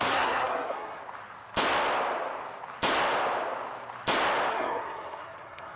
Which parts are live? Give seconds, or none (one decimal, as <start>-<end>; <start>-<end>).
1.0-4.5